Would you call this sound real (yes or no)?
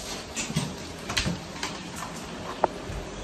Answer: yes